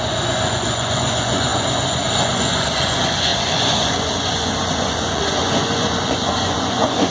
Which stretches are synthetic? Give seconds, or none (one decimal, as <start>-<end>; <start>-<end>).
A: 0.0-7.1